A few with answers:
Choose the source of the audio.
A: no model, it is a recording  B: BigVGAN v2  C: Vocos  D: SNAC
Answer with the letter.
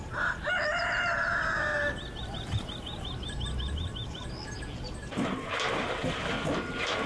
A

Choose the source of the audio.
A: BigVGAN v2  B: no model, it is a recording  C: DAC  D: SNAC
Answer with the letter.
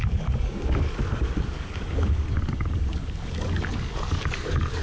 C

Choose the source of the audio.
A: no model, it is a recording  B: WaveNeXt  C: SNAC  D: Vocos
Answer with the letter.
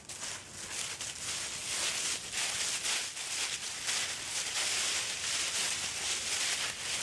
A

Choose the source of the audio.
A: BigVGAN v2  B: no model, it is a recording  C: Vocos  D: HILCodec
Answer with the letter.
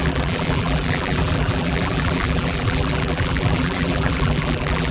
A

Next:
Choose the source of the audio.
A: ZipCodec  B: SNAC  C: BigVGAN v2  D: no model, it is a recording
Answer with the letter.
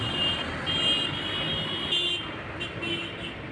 D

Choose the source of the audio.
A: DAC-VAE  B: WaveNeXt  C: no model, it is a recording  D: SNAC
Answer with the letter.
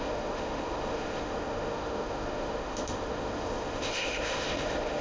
A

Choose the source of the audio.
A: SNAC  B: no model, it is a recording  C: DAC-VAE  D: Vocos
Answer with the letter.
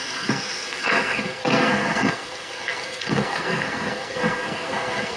A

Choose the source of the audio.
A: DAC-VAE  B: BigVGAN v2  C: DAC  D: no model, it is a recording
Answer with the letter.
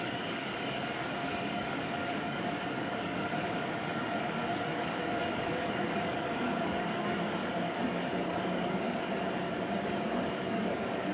C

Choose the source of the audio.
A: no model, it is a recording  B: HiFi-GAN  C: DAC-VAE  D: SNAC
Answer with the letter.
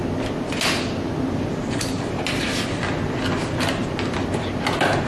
A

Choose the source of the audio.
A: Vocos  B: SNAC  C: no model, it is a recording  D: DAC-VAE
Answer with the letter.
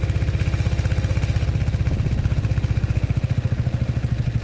C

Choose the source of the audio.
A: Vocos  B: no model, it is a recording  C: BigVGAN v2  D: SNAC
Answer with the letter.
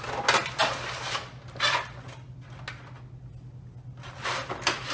B